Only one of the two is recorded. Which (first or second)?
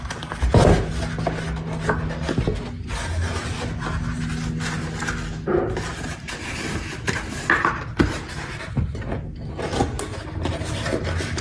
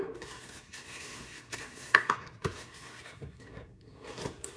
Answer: first